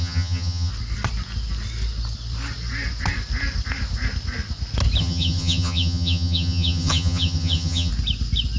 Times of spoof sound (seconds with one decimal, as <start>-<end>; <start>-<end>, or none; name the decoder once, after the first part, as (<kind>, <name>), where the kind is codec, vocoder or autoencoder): 0.0-0.7 (vocoder, HiFi-GAN); 5.0-7.9